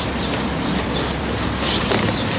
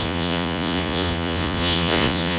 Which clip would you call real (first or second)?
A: first